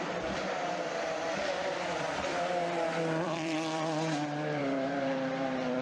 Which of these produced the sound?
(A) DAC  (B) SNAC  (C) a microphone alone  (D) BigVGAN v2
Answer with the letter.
D